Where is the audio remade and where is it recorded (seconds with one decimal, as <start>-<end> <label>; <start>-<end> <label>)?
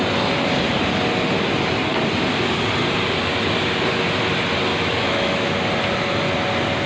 0.0-4.7 recorded; 4.7-5.5 remade; 5.5-6.9 recorded